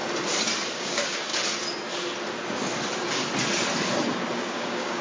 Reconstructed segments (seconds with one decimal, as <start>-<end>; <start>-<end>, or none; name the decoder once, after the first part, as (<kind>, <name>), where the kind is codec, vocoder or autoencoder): 0.7-1.3 (codec, DAC); 4.3-5.0